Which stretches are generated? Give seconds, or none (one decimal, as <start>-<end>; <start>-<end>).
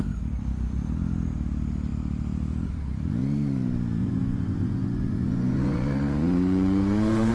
4.0-7.3